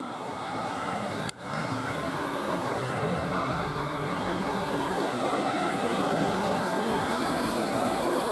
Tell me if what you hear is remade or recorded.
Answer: remade